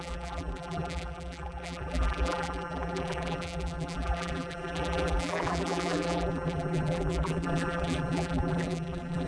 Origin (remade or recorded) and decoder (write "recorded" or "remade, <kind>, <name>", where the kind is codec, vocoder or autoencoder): remade, vocoder, BigVGAN v2